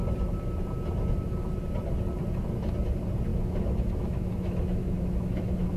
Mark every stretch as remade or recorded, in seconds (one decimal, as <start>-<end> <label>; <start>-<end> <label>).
0.0-3.3 recorded; 3.3-5.8 remade